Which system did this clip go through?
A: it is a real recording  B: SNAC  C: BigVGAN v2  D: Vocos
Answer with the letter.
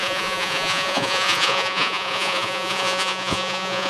D